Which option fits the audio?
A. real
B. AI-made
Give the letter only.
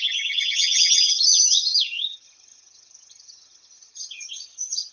B